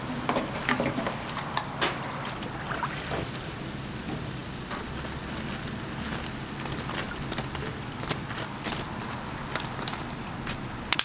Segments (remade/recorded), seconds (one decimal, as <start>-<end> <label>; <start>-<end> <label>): 0.0-11.0 recorded